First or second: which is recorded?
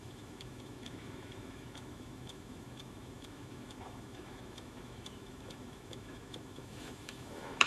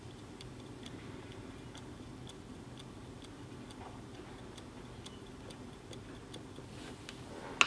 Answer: second